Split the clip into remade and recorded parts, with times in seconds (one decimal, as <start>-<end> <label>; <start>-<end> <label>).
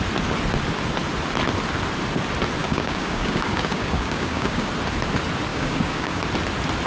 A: 0.0-2.6 recorded; 2.6-4.7 remade; 4.7-5.5 recorded; 5.5-6.2 remade; 6.2-6.9 recorded